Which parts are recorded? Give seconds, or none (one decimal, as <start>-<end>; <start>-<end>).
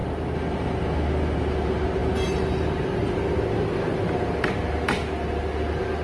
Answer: 0.0-6.0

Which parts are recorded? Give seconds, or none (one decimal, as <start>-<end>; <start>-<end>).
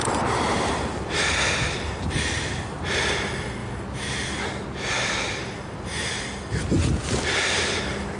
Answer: 0.0-8.2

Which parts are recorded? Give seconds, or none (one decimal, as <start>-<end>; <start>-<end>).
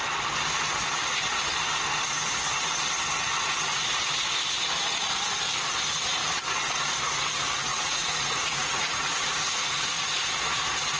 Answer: 0.0-7.7; 10.0-11.0